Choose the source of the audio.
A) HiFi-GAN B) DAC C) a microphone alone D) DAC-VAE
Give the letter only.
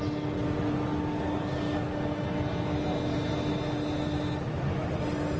C